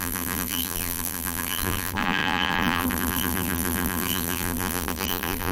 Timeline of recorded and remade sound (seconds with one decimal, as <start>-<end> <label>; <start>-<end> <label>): 0.0-5.5 remade